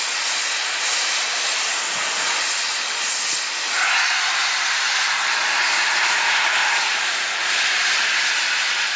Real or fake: real